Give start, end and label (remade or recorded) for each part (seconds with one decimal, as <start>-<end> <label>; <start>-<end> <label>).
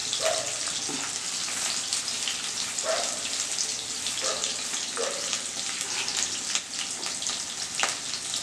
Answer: 0.0-8.4 recorded